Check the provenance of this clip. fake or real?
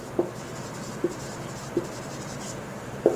real